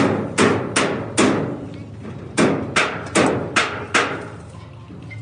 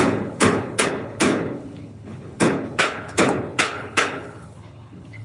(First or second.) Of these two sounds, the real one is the first